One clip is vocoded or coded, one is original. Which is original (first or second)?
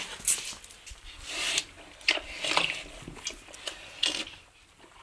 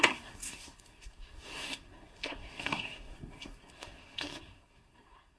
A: first